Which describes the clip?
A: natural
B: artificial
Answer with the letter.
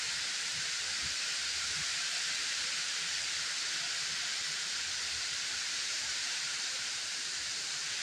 B